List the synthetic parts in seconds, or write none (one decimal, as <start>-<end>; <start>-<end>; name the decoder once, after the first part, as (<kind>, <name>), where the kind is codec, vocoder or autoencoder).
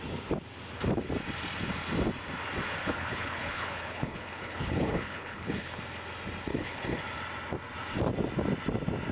2.8-5.8 (codec, HILCodec); 6.5-7.0